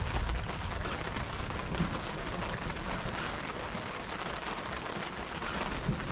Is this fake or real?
real